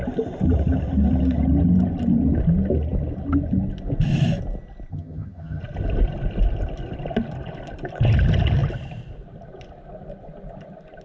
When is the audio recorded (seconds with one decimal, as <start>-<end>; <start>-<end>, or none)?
0.0-4.9; 5.6-11.0